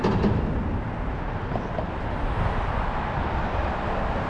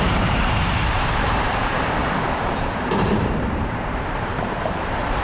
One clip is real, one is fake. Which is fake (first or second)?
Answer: second